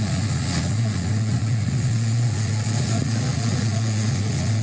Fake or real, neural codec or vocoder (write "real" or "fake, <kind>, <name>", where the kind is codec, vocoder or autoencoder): fake, vocoder, Vocos